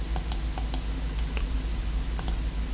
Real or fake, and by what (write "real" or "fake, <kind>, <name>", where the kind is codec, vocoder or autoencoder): real